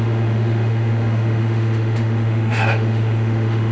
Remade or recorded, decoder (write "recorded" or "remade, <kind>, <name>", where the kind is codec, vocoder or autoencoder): remade, autoencoder, DAC-VAE